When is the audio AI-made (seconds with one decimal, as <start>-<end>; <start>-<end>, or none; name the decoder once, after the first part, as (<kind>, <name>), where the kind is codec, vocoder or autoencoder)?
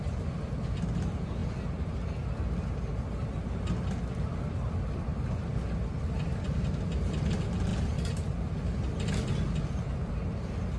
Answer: none